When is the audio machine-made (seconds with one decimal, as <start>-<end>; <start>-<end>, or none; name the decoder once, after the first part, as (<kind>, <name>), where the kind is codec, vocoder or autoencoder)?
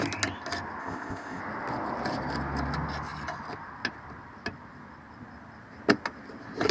0.8-1.4 (codec, ZipCodec)